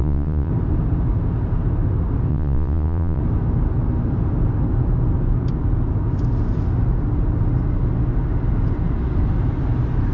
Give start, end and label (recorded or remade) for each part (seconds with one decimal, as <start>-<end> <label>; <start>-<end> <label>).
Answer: 0.0-0.5 remade; 0.5-2.3 recorded; 2.3-3.2 remade; 3.2-10.1 recorded